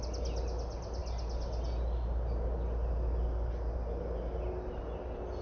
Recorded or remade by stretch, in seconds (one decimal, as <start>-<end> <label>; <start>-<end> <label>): 0.0-5.4 recorded